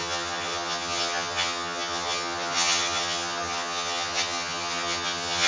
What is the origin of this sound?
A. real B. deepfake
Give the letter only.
B